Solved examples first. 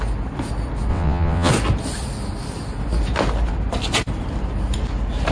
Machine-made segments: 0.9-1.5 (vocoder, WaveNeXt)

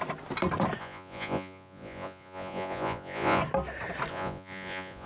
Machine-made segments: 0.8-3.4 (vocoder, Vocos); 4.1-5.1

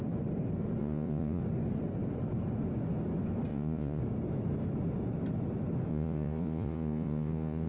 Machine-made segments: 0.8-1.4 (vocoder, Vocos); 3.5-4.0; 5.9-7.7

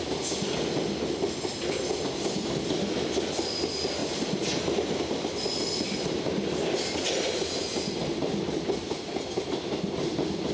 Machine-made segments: none

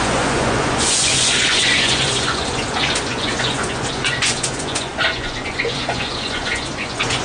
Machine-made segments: 0.0-7.2 (vocoder, Vocos)

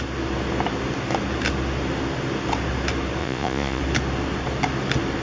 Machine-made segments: 3.2-3.8 (vocoder, Vocos)